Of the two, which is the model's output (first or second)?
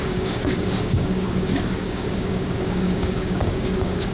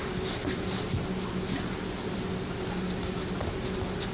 first